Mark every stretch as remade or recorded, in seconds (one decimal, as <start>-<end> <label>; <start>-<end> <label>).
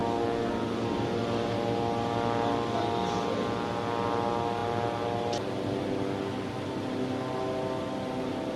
0.0-8.6 recorded